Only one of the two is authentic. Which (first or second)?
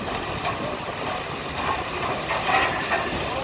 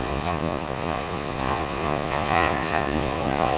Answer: first